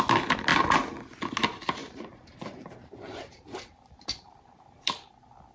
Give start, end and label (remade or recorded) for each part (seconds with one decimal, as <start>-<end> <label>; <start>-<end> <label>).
0.0-1.8 recorded; 1.8-5.1 remade; 5.1-5.5 recorded